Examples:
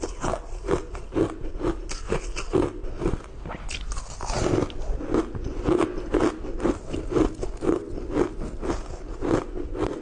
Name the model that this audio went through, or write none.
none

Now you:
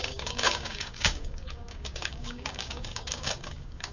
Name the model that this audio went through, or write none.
codec, DAC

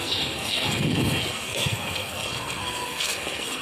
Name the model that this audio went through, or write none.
codec, SNAC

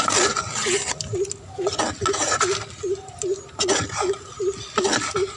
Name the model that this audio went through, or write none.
none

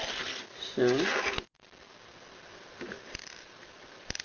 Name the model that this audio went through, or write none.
none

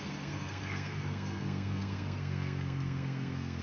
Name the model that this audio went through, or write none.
codec, SNAC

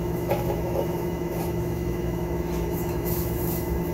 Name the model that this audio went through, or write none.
autoencoder, DAC-VAE